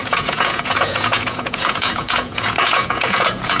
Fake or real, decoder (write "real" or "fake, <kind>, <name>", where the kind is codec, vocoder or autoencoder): fake, vocoder, Vocos